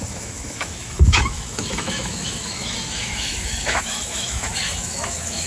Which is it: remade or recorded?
remade